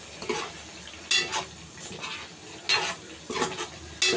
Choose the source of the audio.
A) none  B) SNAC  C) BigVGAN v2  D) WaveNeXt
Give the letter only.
A